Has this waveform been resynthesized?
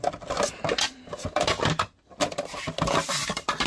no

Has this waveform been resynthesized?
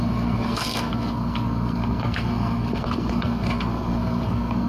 yes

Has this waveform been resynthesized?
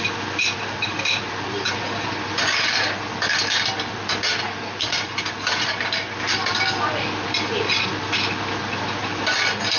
no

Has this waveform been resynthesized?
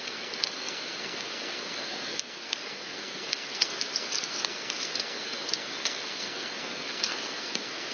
yes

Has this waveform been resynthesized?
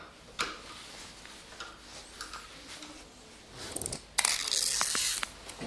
no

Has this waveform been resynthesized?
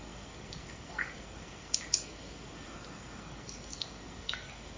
yes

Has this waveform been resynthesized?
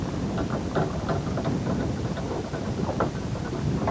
no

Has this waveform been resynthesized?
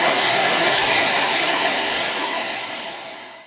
yes